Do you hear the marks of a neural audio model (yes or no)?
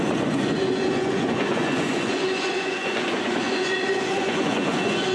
yes